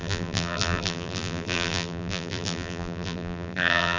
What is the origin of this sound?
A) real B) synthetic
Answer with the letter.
B